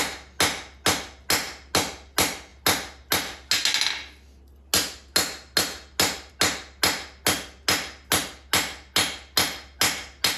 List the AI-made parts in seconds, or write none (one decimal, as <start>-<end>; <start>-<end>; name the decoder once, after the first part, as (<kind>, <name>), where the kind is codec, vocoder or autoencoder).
none

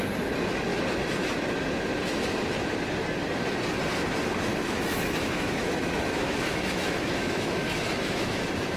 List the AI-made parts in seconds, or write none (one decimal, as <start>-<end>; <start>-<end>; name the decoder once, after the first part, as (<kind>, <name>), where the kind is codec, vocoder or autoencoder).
4.5-8.4 (autoencoder, DAC-VAE)

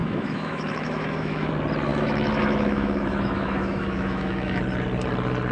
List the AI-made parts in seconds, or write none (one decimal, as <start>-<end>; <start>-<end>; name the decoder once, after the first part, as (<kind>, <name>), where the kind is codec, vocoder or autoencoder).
0.0-1.5 (autoencoder, DAC-VAE); 1.9-4.6

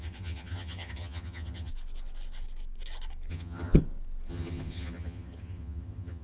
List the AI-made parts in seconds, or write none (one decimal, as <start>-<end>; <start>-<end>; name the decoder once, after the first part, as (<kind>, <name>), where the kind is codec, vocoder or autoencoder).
0.0-1.7 (vocoder, HiFi-GAN); 3.3-3.8; 4.3-6.2

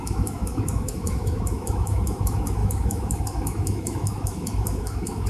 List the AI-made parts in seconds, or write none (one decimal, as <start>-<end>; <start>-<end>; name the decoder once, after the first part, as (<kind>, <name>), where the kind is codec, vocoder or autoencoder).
0.0-5.3 (autoencoder, DAC-VAE)